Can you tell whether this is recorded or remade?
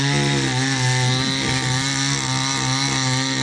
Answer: recorded